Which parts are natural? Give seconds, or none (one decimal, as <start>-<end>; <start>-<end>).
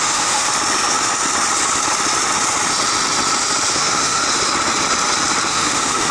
0.5-3.7; 4.2-5.5